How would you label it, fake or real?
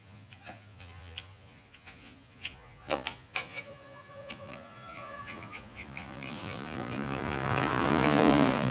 fake